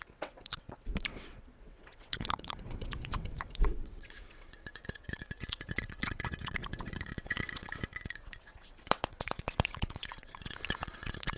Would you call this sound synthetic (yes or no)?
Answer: yes